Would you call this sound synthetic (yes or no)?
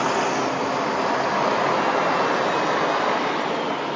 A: no